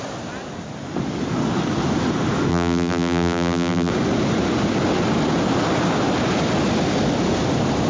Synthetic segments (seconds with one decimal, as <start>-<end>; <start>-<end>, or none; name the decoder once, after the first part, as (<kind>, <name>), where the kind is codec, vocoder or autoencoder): 2.5-3.9 (vocoder, BigVGAN v2)